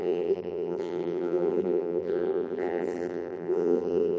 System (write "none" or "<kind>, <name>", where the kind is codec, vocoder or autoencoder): vocoder, BigVGAN v2